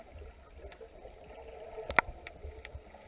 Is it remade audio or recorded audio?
recorded